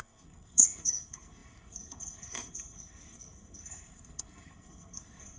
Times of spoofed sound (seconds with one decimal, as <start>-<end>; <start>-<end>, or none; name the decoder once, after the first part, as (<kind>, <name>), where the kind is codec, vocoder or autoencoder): 0.0-5.4 (codec, SNAC)